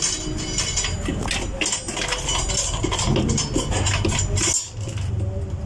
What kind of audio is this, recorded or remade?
recorded